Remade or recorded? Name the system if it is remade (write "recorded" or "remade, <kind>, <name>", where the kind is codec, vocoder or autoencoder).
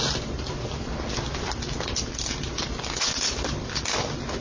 recorded